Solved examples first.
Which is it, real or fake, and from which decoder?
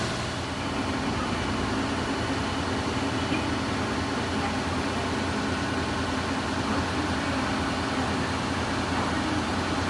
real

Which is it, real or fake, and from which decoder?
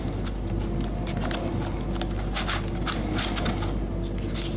real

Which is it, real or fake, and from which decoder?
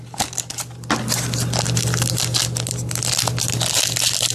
fake, vocoder, BigVGAN v2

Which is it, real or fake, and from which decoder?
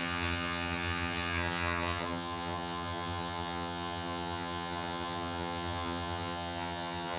fake, vocoder, HiFi-GAN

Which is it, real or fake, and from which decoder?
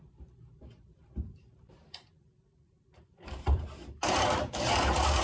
fake, vocoder, BigVGAN v2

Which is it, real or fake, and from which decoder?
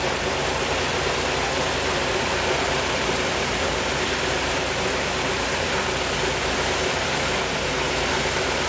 real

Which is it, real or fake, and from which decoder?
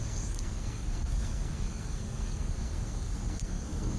fake, codec, SNAC